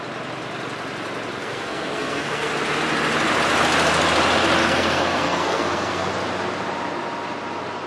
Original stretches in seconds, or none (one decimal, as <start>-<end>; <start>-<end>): 0.0-1.4; 2.5-4.6; 6.1-7.9